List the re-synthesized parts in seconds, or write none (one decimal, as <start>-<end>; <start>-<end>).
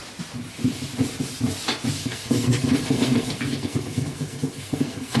2.0-5.2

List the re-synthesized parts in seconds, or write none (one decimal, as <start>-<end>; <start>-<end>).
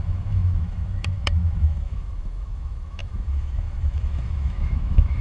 0.0-5.2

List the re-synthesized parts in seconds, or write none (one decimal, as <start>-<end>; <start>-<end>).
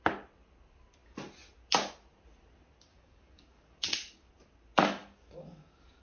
2.9-4.3; 5.0-6.0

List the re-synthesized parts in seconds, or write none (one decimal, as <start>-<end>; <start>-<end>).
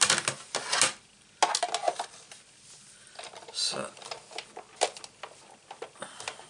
none